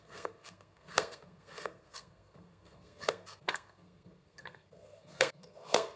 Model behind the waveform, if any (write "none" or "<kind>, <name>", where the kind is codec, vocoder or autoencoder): codec, SNAC